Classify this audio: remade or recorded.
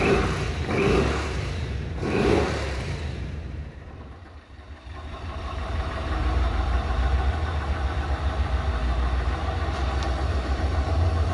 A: remade